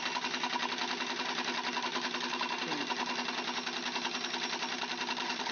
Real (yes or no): yes